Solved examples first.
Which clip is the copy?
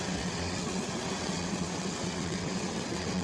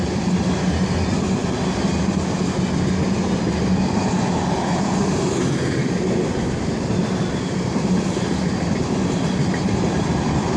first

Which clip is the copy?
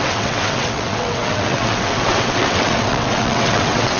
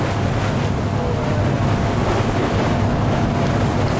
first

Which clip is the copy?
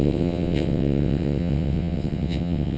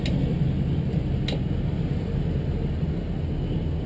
first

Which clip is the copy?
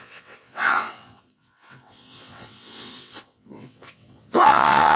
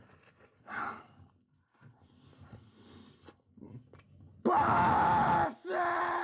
first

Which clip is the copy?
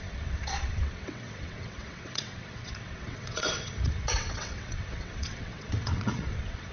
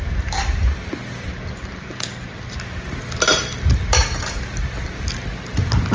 first